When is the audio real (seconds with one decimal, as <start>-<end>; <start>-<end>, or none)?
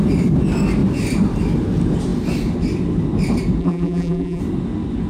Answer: 0.0-3.6; 4.4-5.1